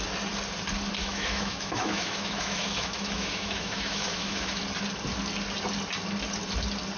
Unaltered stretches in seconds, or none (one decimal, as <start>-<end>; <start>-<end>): 0.0-1.0; 4.6-7.0